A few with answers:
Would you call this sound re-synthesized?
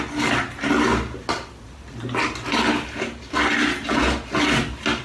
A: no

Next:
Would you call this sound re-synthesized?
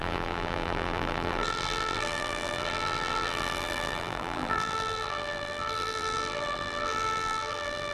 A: yes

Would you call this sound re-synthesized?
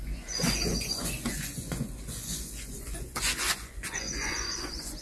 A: yes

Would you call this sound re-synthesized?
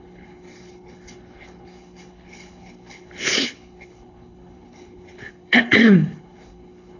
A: yes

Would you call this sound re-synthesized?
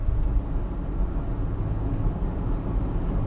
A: no